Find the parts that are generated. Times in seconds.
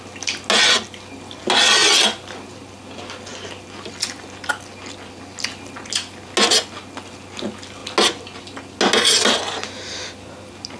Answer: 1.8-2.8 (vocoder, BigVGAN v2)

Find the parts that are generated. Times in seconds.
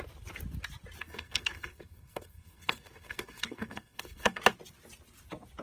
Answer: 1.0-4.4 (codec, SNAC)